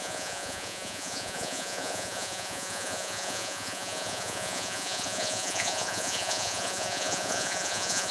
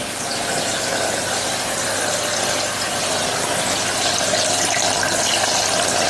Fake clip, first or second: first